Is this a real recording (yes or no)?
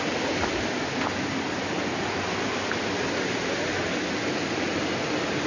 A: yes